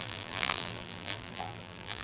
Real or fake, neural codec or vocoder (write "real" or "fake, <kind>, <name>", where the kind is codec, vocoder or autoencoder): fake, vocoder, BigVGAN v2